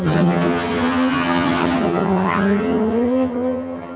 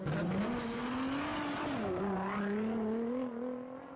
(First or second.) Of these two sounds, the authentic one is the second